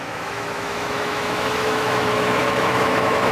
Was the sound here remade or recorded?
remade